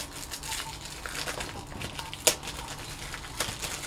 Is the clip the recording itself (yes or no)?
yes